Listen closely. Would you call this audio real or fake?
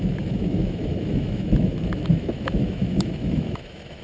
fake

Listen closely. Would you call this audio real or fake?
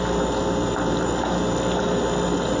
real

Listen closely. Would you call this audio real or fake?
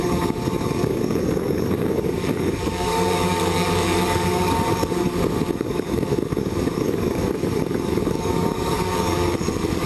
fake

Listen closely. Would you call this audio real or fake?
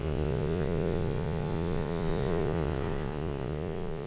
fake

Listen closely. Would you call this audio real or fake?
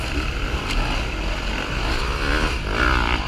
real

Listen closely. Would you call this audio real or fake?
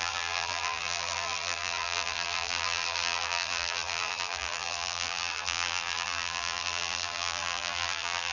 fake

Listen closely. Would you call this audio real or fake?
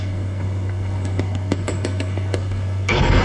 fake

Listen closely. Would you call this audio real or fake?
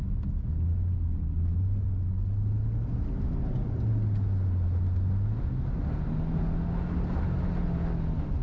real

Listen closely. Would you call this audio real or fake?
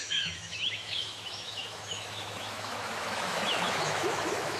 fake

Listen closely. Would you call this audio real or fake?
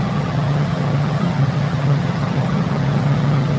fake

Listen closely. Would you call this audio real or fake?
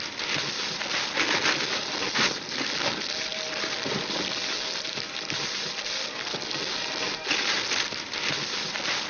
real